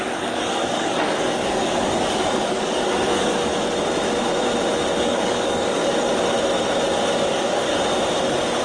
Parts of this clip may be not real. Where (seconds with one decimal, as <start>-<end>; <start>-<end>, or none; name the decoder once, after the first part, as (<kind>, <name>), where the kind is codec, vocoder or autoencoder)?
0.0-3.5 (codec, DAC); 5.0-5.8; 7.3-7.7